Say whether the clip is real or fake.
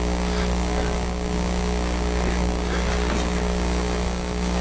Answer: real